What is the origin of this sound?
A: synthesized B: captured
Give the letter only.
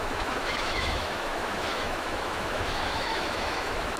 A